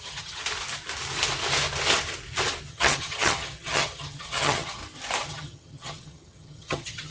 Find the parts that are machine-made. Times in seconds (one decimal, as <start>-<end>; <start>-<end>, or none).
0.0-0.4; 2.7-4.8; 5.3-7.1